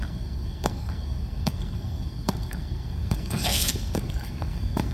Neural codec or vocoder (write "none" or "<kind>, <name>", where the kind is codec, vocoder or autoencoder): codec, SNAC